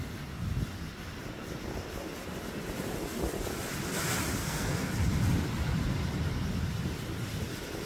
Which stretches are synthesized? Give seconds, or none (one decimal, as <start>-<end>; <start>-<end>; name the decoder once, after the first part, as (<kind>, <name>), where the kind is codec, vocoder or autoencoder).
4.4-4.9 (codec, SNAC)